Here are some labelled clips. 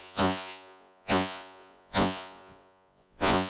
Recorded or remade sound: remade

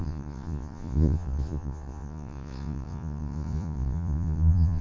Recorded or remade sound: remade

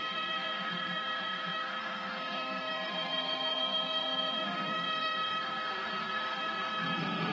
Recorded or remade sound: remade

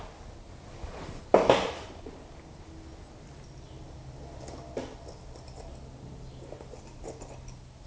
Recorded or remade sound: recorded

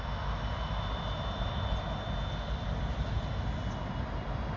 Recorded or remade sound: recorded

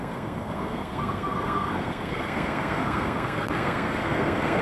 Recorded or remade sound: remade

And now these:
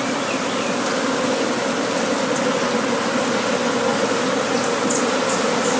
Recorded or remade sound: recorded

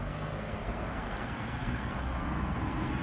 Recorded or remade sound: remade